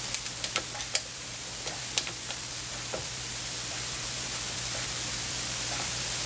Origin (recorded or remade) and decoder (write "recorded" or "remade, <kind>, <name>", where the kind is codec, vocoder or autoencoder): remade, vocoder, BigVGAN v2